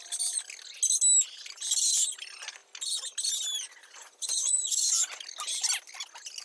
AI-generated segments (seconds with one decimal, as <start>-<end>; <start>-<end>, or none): 3.8-4.9